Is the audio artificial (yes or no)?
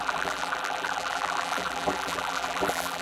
yes